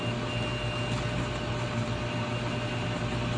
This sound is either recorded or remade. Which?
recorded